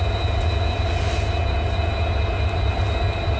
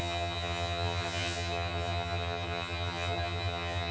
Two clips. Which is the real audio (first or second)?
first